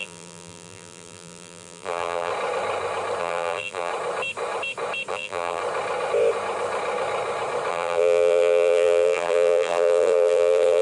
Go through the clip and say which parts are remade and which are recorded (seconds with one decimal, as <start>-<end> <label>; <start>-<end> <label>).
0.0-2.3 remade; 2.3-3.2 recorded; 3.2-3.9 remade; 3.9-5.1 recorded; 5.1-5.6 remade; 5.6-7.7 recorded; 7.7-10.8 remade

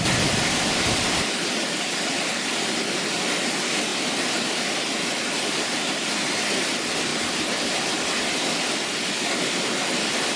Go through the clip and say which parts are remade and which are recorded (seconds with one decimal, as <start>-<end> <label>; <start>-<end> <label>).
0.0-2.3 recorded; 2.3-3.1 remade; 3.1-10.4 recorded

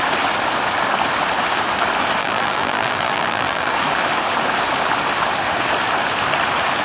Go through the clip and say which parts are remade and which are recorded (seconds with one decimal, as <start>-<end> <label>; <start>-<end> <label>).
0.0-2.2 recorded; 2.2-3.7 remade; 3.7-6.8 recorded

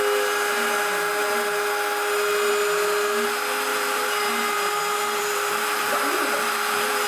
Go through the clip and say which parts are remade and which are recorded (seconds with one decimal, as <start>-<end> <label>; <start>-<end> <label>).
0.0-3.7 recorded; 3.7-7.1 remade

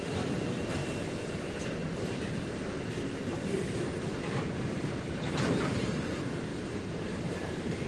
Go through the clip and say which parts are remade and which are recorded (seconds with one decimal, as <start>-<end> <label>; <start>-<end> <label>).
0.0-0.8 remade; 0.8-1.9 recorded; 1.9-7.9 remade

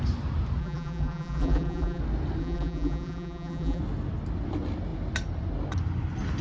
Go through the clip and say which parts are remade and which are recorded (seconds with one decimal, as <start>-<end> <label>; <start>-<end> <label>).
0.0-0.6 recorded; 0.6-2.0 remade; 2.0-2.4 recorded; 2.4-3.8 remade; 3.8-6.4 recorded